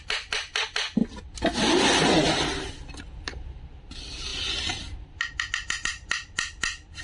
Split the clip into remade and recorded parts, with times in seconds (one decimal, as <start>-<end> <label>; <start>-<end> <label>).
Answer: 0.0-7.0 recorded